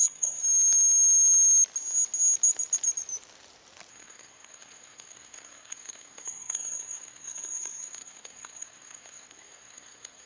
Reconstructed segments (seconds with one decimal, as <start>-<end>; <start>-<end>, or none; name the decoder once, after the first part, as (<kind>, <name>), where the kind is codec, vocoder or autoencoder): 0.0-0.4 (codec, SNAC); 3.9-10.3